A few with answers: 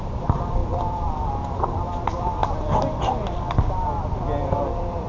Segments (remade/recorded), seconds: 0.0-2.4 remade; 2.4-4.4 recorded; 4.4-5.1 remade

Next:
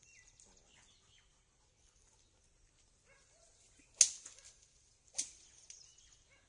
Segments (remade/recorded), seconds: 0.0-6.5 recorded